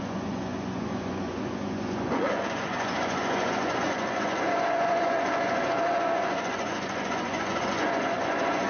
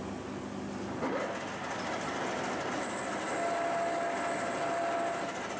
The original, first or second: second